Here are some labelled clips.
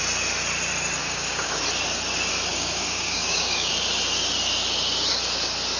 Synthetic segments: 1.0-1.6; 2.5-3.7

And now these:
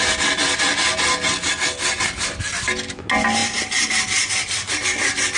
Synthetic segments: none

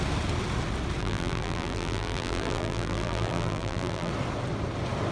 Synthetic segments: 1.0-4.1

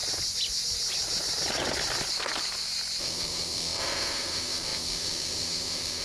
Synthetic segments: 3.0-6.0

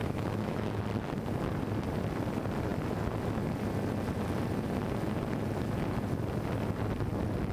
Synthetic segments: 0.0-0.8

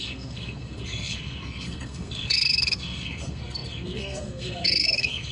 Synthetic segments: 0.0-5.3

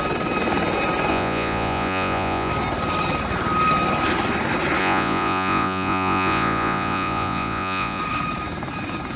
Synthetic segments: 1.1-2.5; 4.8-8.0